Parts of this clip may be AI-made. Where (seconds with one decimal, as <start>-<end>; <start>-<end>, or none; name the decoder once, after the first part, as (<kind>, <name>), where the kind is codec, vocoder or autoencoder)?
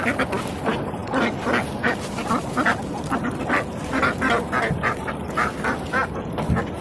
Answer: none